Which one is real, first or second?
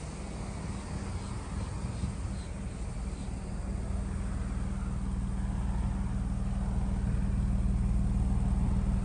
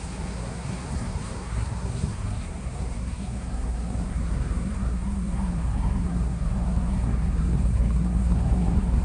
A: first